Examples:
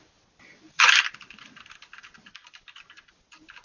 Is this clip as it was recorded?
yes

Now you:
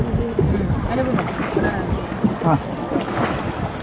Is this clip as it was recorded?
yes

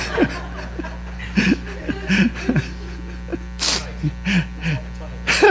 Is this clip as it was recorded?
yes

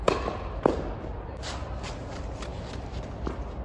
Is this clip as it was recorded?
no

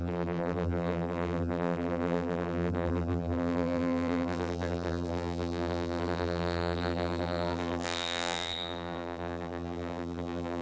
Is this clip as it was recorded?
no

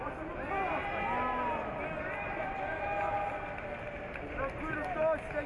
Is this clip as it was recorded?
yes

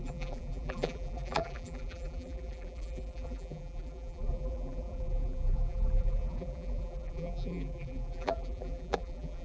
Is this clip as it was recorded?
no